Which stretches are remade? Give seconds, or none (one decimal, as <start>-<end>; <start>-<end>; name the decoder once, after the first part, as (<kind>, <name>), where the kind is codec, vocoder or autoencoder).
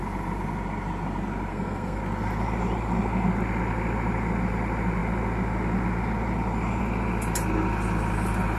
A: 1.5-2.0 (codec, SNAC)